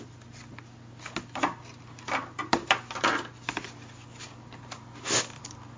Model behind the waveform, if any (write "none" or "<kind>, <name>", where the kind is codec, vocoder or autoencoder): none